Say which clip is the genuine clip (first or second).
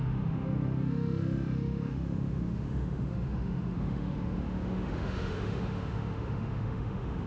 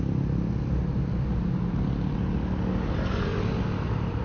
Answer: second